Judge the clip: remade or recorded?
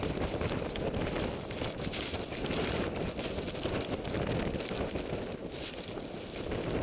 recorded